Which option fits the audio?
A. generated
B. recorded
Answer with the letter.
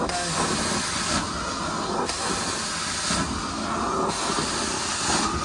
B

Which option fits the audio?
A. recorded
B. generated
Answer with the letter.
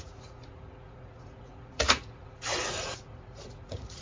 B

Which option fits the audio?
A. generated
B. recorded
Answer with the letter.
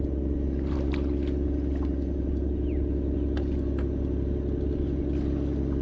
B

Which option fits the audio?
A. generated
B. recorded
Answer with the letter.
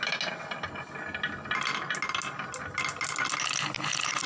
B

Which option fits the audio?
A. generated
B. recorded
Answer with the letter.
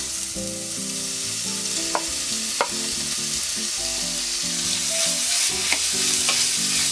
B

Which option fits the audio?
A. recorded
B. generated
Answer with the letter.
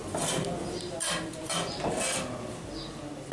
A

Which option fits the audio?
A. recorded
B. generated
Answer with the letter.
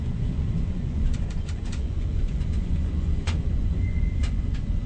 B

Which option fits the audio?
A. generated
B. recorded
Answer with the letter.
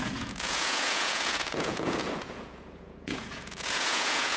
A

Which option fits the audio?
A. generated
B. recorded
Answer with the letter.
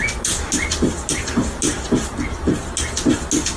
B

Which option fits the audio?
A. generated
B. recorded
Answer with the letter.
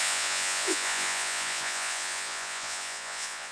A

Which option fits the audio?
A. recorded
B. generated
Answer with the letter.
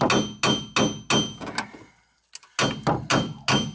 A